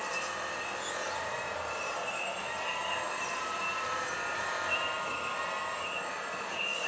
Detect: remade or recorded remade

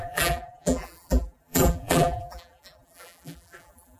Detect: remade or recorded remade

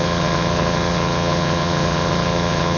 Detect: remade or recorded remade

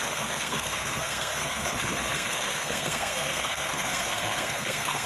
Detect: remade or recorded remade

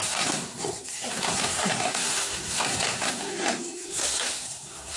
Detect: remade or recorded remade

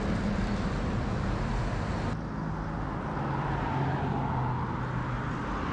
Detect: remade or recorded recorded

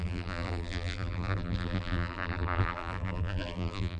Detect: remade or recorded remade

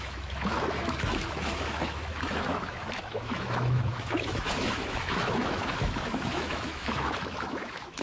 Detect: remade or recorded remade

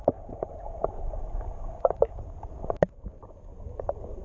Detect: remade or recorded recorded